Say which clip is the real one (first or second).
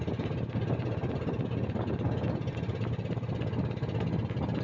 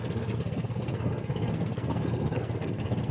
first